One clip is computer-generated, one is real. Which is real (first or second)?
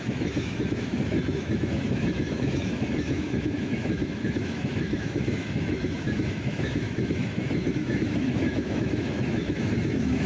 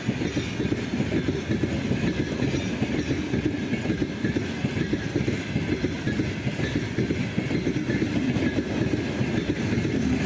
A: second